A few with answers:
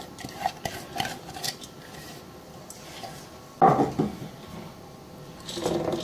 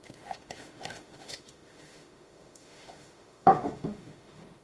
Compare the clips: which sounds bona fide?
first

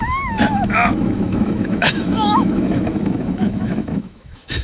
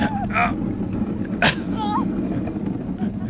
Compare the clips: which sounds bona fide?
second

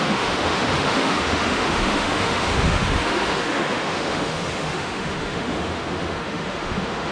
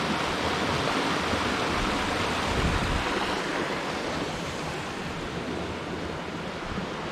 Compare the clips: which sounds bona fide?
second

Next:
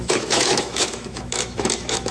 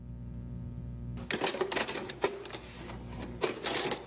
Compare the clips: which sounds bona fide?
second